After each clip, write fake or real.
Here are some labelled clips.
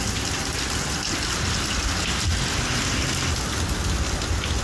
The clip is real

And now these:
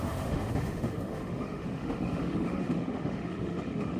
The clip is fake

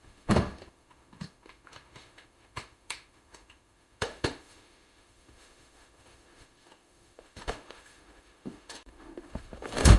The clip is fake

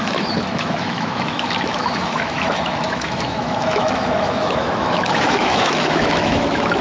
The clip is fake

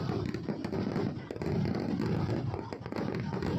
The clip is real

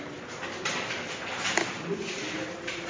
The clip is real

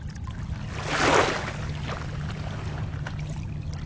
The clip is real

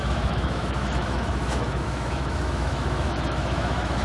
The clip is fake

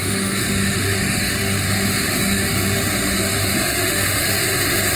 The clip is fake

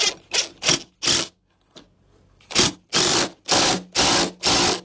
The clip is real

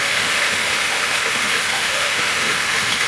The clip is fake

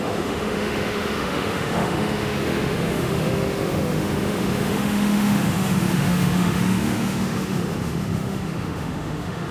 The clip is fake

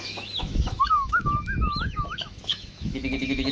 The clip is fake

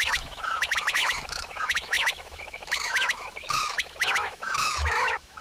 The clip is fake